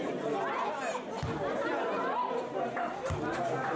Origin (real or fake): real